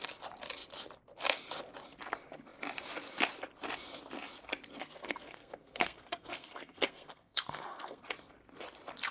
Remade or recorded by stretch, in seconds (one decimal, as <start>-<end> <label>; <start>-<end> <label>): 0.0-4.8 recorded; 4.8-8.0 remade; 8.0-9.1 recorded